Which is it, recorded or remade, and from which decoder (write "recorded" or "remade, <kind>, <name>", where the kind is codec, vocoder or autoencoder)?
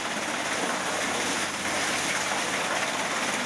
recorded